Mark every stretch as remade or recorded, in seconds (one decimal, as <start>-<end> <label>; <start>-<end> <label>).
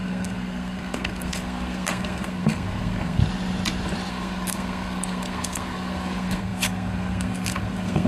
0.0-3.2 remade; 3.2-4.1 recorded; 4.1-8.1 remade